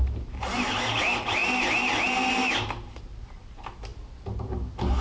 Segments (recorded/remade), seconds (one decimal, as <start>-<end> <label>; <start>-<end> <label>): 0.0-5.0 recorded